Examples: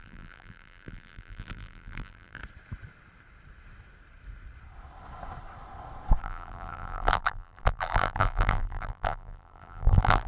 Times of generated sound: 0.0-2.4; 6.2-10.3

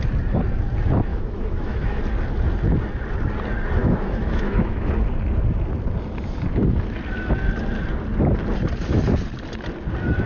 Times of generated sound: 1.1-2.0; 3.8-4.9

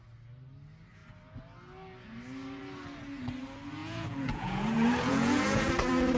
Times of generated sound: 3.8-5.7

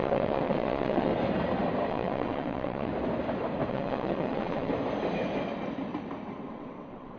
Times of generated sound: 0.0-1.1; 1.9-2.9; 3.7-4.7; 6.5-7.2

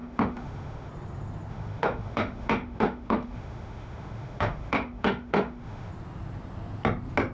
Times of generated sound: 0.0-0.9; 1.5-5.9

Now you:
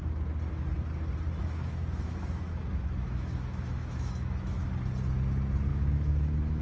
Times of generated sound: 1.4-4.7; 5.7-6.6

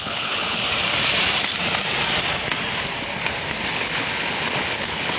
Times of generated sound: 0.0-0.6; 3.7-5.2